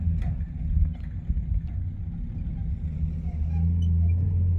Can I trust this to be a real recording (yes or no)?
yes